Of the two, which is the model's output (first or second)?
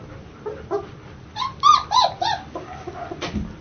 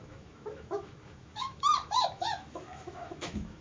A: second